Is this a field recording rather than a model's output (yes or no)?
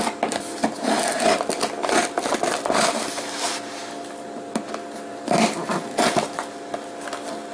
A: yes